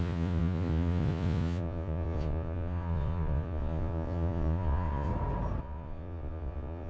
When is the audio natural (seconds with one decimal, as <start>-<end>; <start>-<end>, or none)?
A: 5.1-5.6